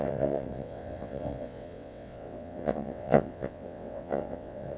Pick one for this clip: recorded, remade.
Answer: remade